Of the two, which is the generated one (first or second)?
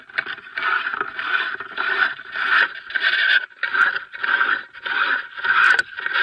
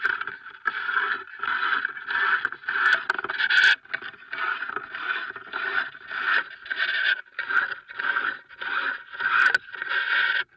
first